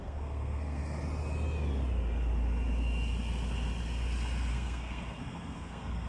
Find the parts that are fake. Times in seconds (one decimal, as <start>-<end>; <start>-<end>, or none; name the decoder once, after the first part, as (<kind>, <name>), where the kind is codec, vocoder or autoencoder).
0.0-0.8 (codec, SNAC); 4.5-6.1